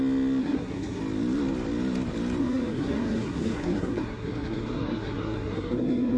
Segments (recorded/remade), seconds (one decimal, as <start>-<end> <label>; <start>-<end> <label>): 0.0-0.4 recorded; 0.4-1.0 remade; 1.0-2.4 recorded; 2.4-6.2 remade